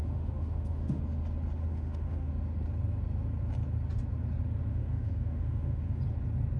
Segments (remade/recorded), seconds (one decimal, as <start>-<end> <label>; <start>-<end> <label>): 0.0-1.0 remade; 1.0-1.7 recorded; 1.7-2.3 remade; 2.3-4.7 recorded; 4.7-6.0 remade; 6.0-6.6 recorded

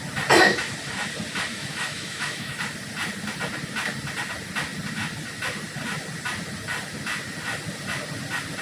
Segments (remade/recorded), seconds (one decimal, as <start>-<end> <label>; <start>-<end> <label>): 0.0-1.5 recorded; 1.5-2.6 remade; 2.6-8.6 recorded

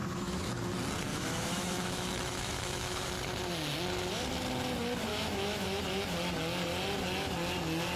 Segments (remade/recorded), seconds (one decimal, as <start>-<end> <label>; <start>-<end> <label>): 0.0-0.5 remade; 0.5-1.1 recorded; 1.1-3.1 remade; 3.1-5.1 recorded; 5.1-5.8 remade; 5.8-8.0 recorded